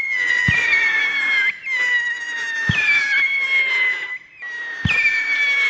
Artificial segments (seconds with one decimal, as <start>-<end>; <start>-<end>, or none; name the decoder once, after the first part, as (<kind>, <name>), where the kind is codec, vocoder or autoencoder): none